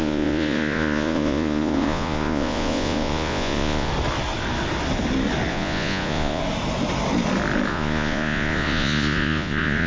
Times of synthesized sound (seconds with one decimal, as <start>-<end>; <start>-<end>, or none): 0.0-3.9; 5.5-6.4; 7.7-9.9